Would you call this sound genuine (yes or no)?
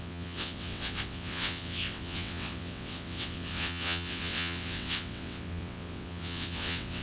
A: no